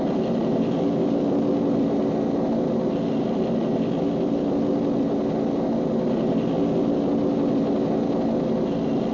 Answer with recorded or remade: recorded